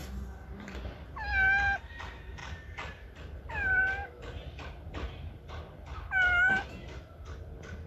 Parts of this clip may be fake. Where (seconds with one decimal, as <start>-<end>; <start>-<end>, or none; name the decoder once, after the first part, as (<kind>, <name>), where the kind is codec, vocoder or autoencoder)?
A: 2.4-6.7 (vocoder, BigVGAN v2)